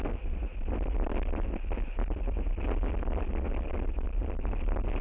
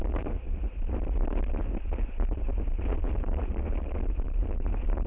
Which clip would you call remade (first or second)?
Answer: second